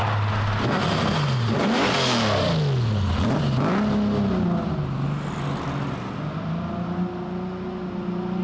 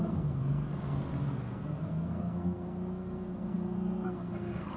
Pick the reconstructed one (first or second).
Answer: second